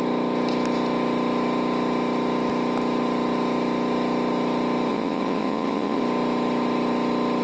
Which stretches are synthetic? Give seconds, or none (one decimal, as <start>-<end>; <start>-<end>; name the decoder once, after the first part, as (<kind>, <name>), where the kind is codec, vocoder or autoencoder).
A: 4.9-6.0 (vocoder, Vocos)